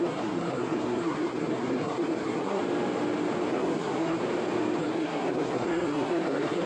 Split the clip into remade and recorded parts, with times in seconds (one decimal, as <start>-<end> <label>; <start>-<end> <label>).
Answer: 0.0-2.6 remade; 2.6-3.5 recorded; 3.5-4.2 remade; 4.2-4.8 recorded; 4.8-6.7 remade